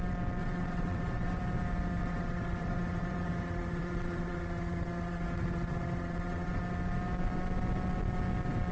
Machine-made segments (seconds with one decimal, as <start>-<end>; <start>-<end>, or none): 0.4-1.4; 2.0-6.6